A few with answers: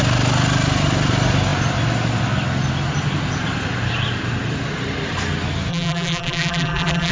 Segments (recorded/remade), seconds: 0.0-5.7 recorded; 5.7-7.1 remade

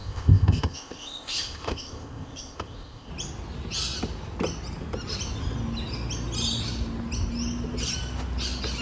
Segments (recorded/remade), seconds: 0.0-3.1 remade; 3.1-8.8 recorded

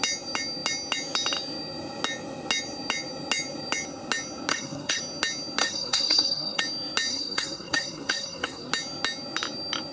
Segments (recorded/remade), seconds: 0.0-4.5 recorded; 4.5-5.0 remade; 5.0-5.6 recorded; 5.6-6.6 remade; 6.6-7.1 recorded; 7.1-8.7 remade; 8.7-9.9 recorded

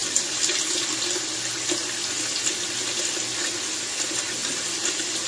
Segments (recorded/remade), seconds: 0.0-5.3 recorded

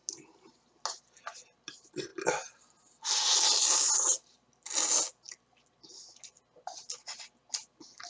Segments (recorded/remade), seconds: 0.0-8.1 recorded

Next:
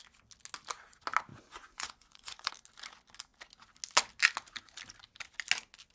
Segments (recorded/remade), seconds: 0.0-1.3 recorded; 1.3-2.5 remade; 2.5-5.9 recorded